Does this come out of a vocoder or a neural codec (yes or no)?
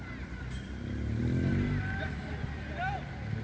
no